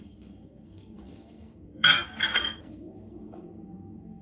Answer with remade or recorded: remade